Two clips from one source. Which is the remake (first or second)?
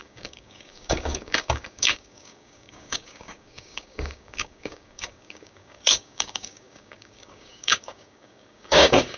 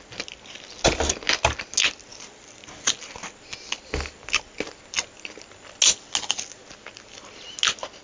first